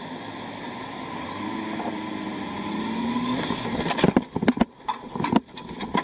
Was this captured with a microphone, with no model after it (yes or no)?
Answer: yes